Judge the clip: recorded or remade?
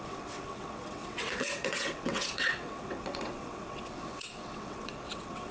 remade